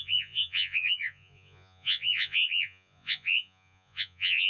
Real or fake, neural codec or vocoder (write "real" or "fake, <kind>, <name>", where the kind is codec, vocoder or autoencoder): fake, vocoder, Vocos